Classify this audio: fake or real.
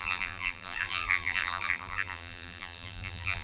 fake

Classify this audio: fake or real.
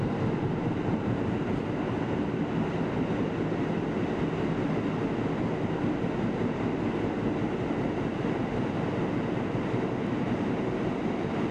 real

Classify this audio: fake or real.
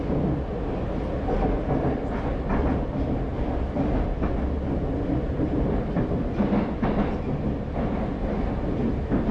real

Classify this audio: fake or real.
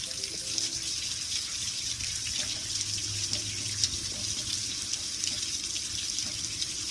real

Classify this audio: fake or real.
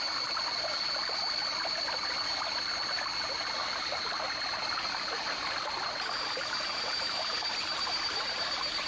real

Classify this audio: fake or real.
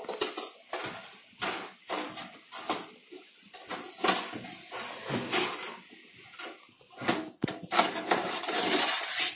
real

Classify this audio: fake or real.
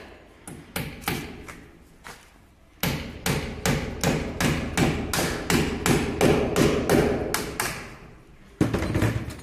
real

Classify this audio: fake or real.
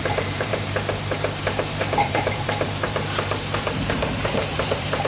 fake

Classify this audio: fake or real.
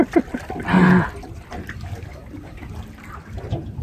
real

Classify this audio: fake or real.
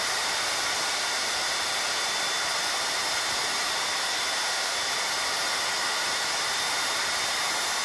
real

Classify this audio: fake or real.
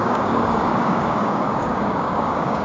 fake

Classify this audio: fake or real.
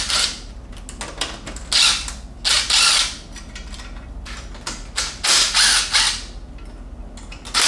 real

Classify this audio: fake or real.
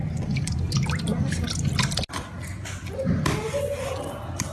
real